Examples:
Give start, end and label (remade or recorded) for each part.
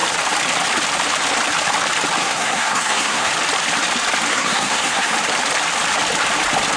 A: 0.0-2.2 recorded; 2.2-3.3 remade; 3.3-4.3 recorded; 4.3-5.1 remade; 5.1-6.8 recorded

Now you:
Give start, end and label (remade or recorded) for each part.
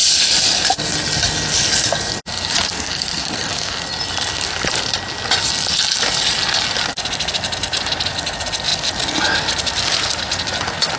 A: 0.0-2.7 recorded; 2.7-3.8 remade; 3.8-11.0 recorded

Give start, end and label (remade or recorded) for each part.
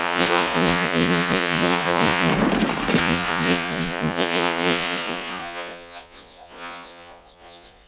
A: 0.0-2.3 remade; 2.3-3.0 recorded; 3.0-7.9 remade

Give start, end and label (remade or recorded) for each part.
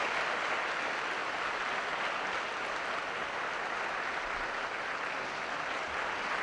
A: 0.0-6.4 recorded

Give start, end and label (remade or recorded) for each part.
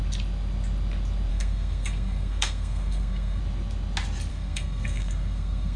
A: 0.0-1.3 recorded; 1.3-3.4 remade; 3.4-4.3 recorded; 4.3-5.8 remade